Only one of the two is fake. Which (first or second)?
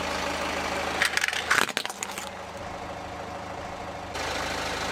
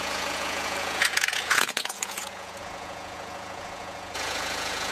second